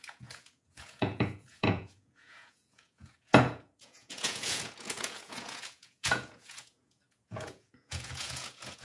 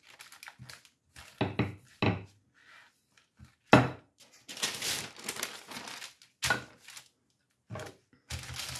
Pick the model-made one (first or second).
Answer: first